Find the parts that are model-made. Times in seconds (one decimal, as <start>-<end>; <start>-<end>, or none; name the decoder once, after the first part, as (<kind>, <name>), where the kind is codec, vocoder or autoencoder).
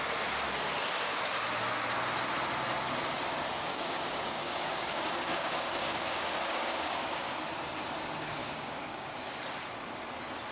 3.7-7.3 (codec, DAC); 8.4-9.1